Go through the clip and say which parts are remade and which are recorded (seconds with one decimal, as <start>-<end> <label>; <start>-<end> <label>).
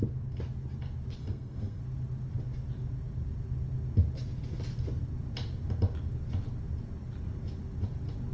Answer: 0.0-1.2 recorded; 1.2-1.8 remade; 1.8-8.3 recorded